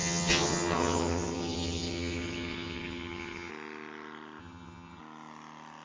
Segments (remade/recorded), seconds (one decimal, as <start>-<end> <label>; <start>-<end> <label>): 0.0-3.5 remade; 3.5-4.4 recorded; 4.4-5.0 remade; 5.0-5.8 recorded